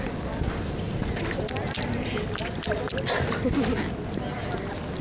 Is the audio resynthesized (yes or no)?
no